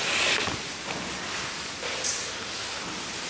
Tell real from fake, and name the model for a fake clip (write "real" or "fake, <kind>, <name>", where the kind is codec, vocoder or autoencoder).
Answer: real